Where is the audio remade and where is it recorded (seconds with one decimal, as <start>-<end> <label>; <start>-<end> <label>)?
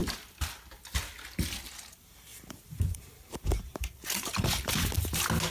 0.0-2.3 recorded; 2.3-4.7 remade; 4.7-5.5 recorded